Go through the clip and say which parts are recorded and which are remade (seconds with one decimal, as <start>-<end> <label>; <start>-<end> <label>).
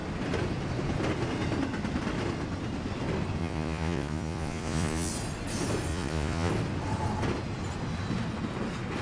0.0-3.4 recorded; 3.4-5.1 remade; 5.1-5.9 recorded; 5.9-6.5 remade; 6.5-9.0 recorded